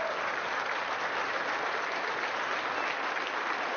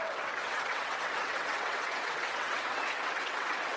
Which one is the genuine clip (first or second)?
first